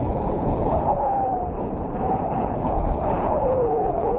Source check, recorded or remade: remade